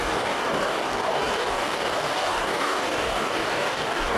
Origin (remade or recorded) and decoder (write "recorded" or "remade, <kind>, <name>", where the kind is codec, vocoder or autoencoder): remade, codec, DAC